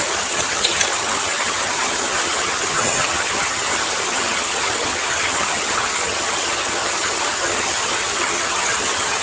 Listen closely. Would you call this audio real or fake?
fake